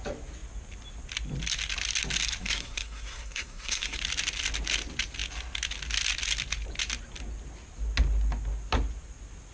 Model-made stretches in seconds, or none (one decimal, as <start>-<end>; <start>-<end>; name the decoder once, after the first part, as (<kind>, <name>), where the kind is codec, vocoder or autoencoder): 2.4-4.0 (codec, SNAC)